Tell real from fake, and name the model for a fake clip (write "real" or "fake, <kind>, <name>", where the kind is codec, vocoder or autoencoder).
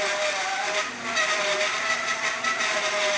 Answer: real